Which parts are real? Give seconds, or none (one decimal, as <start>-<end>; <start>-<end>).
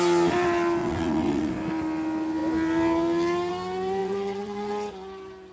0.0-0.8; 1.5-4.0; 4.7-5.5